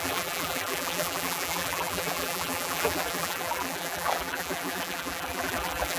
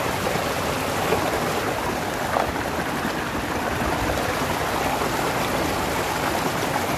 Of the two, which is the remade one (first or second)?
first